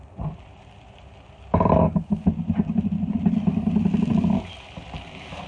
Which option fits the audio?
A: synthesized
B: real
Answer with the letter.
A